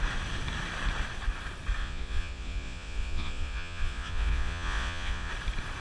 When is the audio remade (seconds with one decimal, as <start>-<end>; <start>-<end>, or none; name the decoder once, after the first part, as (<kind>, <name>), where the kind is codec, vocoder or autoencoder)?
1.8-5.3 (vocoder, Vocos)